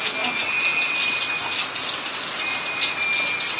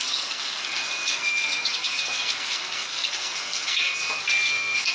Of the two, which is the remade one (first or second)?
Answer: second